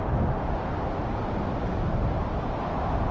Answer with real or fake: real